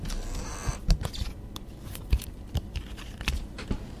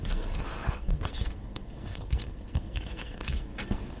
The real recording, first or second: first